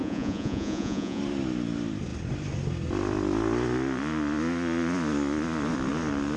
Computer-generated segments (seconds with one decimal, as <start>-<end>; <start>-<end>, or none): 0.0-1.2